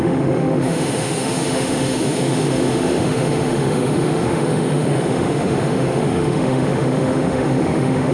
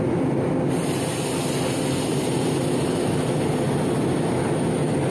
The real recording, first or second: second